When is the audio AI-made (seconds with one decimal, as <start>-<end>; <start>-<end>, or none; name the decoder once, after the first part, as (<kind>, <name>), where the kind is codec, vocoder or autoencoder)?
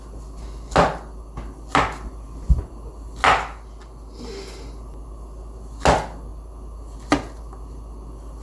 none